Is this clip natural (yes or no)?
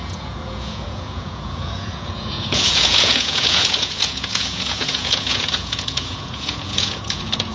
no